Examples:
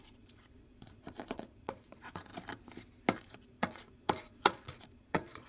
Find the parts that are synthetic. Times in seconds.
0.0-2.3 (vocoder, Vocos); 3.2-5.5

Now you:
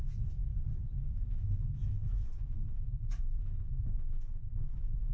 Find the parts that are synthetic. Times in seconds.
0.0-0.5 (autoencoder, DAC-VAE); 1.1-5.1

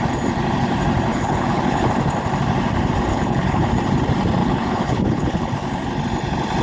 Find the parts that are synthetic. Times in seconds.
1.1-1.9 (codec, HILCodec); 3.1-3.7; 4.4-5.5

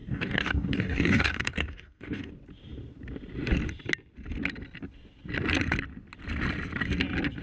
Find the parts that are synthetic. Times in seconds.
0.0-2.3 (codec, DAC)